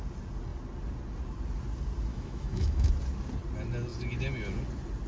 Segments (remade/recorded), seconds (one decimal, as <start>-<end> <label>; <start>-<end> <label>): 0.0-2.1 recorded; 2.1-2.9 remade; 2.9-5.1 recorded